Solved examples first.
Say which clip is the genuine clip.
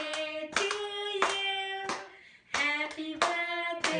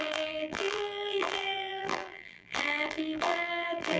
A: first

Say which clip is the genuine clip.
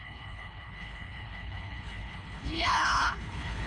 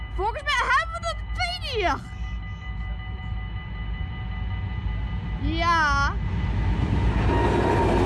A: second